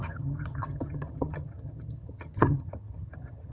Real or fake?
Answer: fake